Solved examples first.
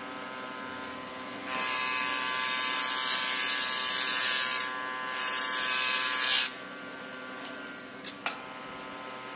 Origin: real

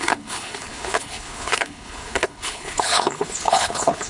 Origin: fake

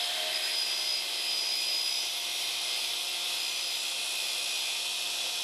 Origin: fake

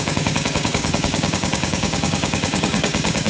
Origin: fake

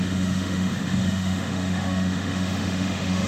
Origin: fake